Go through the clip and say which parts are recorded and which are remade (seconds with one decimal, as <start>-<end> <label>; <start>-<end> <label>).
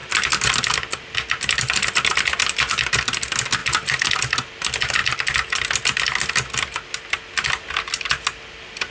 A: 0.0-8.9 recorded